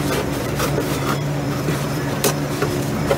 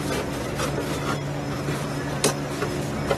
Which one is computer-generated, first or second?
first